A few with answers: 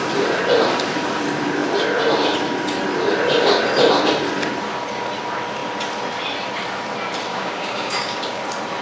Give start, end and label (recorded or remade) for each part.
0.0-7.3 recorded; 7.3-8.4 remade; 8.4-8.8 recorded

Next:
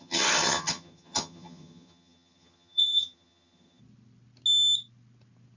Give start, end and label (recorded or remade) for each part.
0.0-3.8 remade; 3.8-5.6 recorded

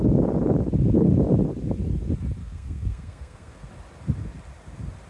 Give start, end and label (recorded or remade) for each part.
0.0-2.4 recorded; 2.4-3.7 remade; 3.7-5.1 recorded

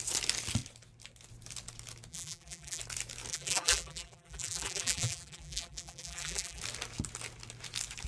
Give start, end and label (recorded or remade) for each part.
0.0-2.1 recorded; 2.1-2.8 remade; 2.8-3.3 recorded; 3.3-6.6 remade; 6.6-8.1 recorded

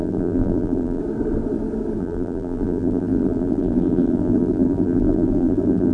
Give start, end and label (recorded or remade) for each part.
0.0-1.0 remade; 1.0-2.0 recorded; 2.0-5.9 remade

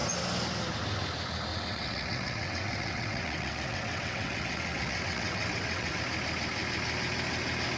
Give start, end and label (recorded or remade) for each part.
0.0-1.5 recorded; 1.5-6.0 remade; 6.0-7.8 recorded

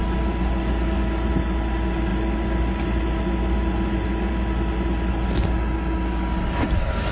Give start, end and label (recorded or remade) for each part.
0.0-7.1 recorded